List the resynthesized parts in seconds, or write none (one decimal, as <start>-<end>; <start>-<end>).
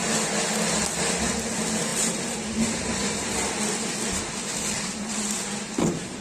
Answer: 1.9-5.6